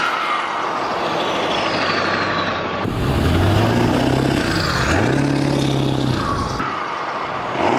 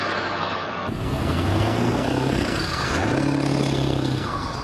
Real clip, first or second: first